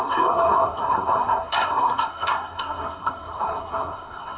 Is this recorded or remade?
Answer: remade